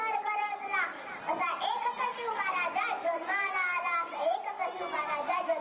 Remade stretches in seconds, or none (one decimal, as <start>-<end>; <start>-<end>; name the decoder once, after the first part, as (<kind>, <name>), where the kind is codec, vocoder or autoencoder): 2.1-3.5 (vocoder, BigVGAN v2)